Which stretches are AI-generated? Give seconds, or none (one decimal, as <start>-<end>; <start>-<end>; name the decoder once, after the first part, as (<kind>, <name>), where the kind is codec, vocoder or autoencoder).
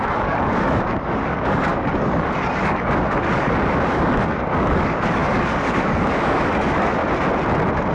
0.0-7.0 (codec, DAC)